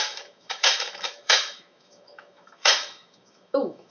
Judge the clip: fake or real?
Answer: fake